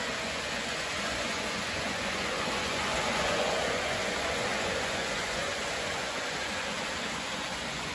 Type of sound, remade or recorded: remade